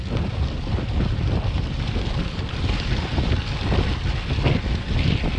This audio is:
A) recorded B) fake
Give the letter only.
A